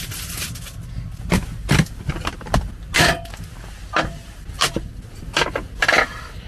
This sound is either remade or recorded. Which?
recorded